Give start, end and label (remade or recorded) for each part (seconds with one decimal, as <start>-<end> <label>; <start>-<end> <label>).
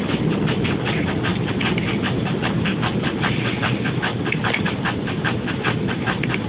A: 0.0-6.5 recorded